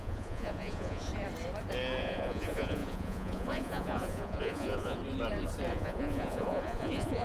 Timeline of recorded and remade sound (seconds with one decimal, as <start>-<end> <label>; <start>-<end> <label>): 0.0-1.1 remade; 1.1-2.0 recorded; 2.0-5.0 remade; 5.0-5.7 recorded; 5.7-7.2 remade